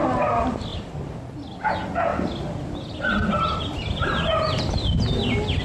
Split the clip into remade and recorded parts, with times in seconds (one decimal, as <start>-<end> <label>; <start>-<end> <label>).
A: 0.0-5.6 recorded